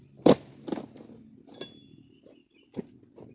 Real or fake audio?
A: real